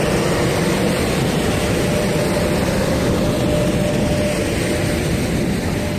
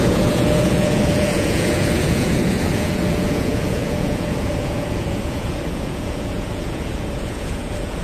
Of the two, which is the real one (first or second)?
first